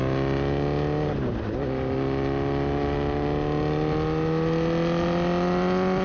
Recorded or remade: recorded